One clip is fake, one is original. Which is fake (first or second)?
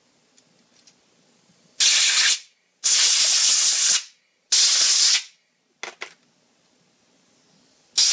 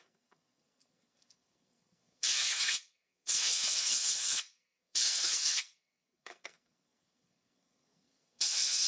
second